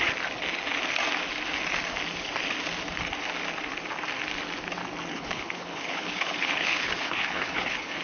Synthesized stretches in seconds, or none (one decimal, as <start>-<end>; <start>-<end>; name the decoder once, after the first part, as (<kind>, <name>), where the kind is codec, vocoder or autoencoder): 5.1-8.0 (codec, HILCodec)

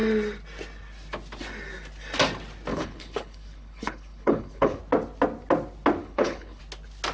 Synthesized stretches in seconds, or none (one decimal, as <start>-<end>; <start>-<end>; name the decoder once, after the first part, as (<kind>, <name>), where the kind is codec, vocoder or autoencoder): 2.7-4.8 (codec, HILCodec); 6.0-6.6

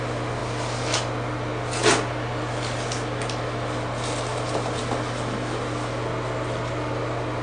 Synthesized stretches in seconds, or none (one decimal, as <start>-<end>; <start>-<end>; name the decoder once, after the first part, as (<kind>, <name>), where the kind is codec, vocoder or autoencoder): none